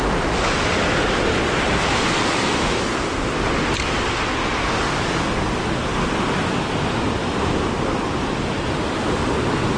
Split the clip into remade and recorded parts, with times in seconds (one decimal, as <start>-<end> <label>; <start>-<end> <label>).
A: 0.0-9.8 recorded